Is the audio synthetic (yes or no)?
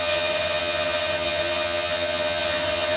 yes